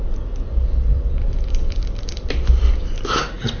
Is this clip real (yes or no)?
no